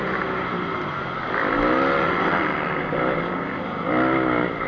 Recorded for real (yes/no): yes